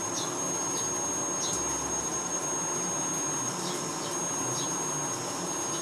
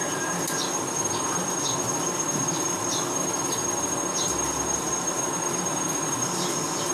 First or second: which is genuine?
first